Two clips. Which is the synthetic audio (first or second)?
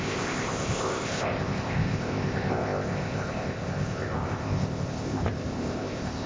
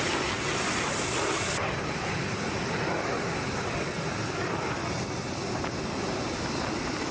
first